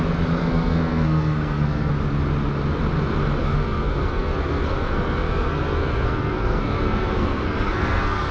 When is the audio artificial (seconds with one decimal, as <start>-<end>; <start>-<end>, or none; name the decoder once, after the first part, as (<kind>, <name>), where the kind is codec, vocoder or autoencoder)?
0.4-1.9 (codec, SNAC); 3.4-8.3